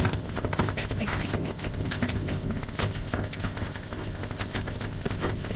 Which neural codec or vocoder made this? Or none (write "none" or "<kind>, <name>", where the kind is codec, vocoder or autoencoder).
codec, ZipCodec